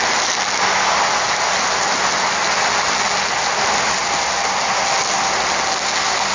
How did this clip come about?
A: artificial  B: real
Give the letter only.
B